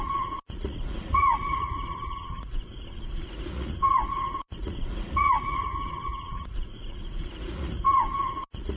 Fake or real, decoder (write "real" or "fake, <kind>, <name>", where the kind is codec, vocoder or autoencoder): fake, vocoder, Vocos